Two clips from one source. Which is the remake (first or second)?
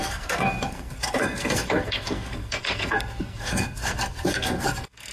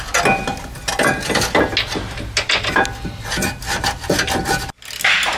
first